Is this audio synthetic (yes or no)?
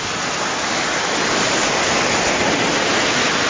no